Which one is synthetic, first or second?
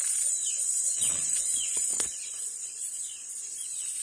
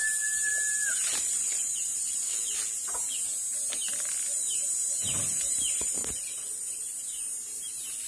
first